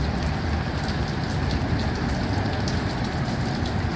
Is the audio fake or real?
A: real